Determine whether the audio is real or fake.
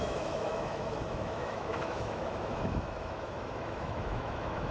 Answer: fake